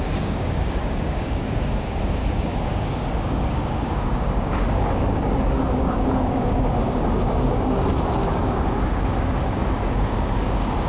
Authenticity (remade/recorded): remade